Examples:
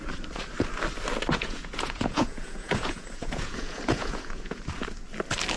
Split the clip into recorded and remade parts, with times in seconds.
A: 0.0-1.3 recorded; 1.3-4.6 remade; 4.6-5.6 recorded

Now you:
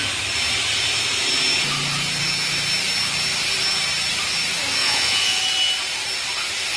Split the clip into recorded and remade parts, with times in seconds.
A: 0.0-4.8 recorded; 4.8-5.4 remade; 5.4-6.8 recorded

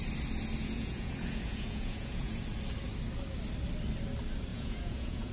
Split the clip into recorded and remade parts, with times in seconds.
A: 0.0-0.6 recorded; 0.6-2.3 remade; 2.3-4.5 recorded; 4.5-5.3 remade

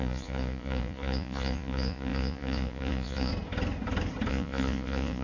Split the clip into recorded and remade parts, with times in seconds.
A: 0.0-3.3 remade; 3.3-4.3 recorded; 4.3-5.2 remade

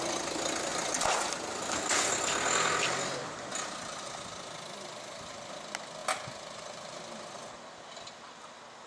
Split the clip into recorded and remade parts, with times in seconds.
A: 0.0-8.9 recorded

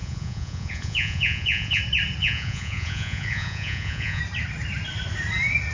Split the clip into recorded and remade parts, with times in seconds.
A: 0.0-1.8 remade; 1.8-2.2 recorded; 2.2-4.2 remade; 4.2-5.7 recorded

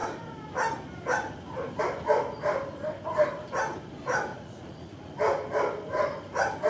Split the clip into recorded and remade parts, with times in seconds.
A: 0.0-4.3 recorded; 4.3-5.1 remade; 5.1-6.7 recorded